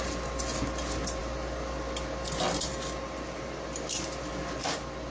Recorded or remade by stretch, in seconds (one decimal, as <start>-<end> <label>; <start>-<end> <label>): 0.0-5.1 recorded